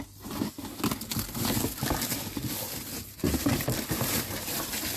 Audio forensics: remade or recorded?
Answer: recorded